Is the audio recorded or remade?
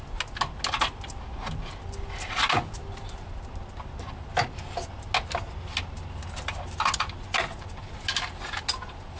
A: recorded